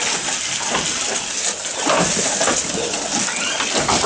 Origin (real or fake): real